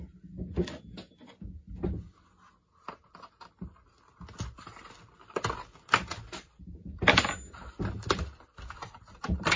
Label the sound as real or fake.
real